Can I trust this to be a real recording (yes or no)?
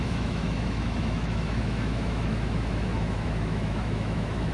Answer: no